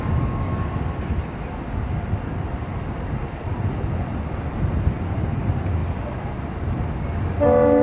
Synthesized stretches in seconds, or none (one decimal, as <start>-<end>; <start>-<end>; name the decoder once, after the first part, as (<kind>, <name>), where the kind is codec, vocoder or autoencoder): none